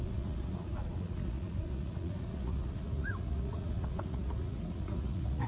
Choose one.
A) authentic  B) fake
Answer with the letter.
B